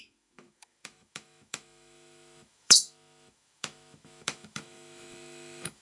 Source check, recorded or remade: remade